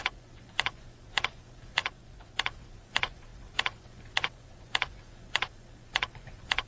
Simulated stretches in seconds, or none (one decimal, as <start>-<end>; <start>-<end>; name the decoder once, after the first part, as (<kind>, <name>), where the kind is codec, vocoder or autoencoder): 0.0-6.7 (vocoder, Vocos)